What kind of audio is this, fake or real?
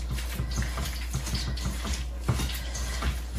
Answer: real